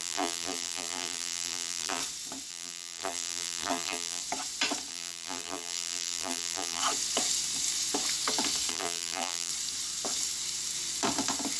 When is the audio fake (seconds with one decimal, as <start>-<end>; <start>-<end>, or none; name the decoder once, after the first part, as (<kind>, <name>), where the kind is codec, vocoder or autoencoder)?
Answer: 0.0-2.0 (vocoder, BigVGAN v2); 2.5-4.2; 4.9-6.8; 8.7-9.5